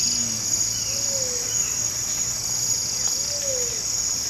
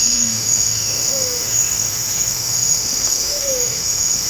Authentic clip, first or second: first